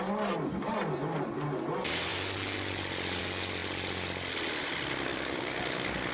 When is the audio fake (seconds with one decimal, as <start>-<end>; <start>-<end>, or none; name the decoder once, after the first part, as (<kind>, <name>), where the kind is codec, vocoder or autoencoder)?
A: 5.1-6.1 (codec, DAC)